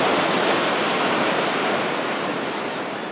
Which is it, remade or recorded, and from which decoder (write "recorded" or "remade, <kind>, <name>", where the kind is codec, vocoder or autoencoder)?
recorded